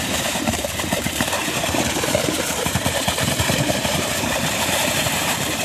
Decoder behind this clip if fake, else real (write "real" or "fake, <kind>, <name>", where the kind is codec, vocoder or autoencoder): fake, vocoder, BigVGAN v2